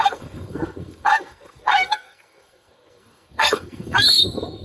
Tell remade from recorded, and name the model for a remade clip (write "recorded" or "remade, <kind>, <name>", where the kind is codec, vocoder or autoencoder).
remade, codec, SNAC